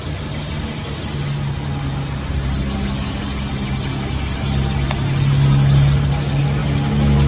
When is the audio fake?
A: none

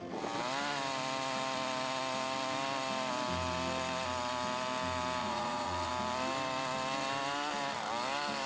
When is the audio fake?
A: 5.2-5.9 (vocoder, Vocos)